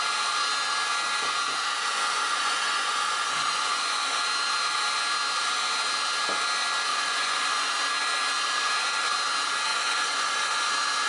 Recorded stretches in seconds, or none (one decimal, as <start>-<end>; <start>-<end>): 0.0-1.9; 4.2-6.9; 7.7-9.7; 10.7-11.1